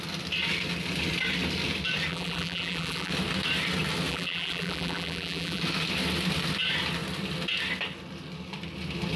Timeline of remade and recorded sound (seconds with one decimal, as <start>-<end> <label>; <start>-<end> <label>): 0.0-2.1 recorded; 2.1-3.1 remade; 3.1-4.1 recorded; 4.1-5.6 remade; 5.6-9.2 recorded